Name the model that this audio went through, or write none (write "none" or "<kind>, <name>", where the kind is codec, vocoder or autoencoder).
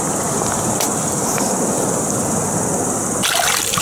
none